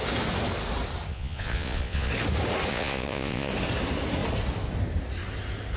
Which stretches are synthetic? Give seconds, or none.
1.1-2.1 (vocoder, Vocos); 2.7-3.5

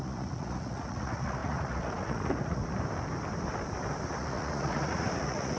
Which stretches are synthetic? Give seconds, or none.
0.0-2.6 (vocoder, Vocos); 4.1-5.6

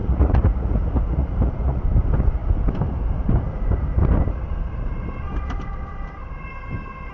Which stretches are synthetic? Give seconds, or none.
0.0-1.8 (vocoder, Vocos)

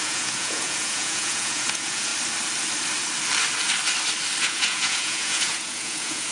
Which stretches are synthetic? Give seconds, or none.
0.0-2.1 (vocoder, Vocos); 4.4-6.3

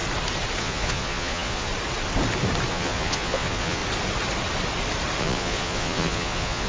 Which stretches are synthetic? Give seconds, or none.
0.6-1.7 (vocoder, Vocos); 2.7-3.8; 5.2-6.7

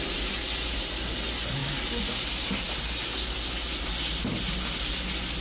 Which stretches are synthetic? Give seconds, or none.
none

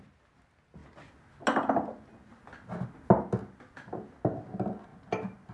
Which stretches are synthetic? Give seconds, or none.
none